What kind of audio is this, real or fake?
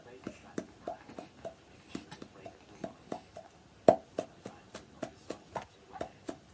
real